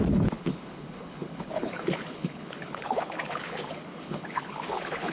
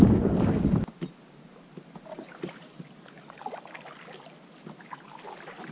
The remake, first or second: first